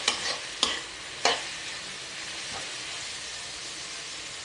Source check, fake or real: real